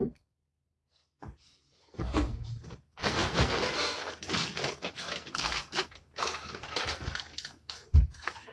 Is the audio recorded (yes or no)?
no